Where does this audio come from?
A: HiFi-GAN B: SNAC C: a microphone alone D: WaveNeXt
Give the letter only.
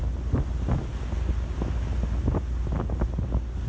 C